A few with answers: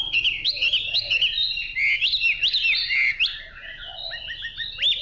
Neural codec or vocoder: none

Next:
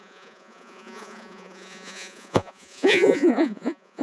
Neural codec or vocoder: vocoder, Vocos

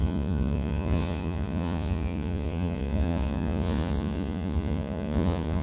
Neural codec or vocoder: vocoder, Vocos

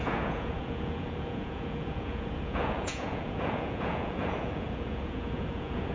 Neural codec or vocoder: vocoder, Vocos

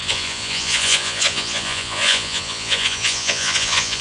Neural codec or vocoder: vocoder, Vocos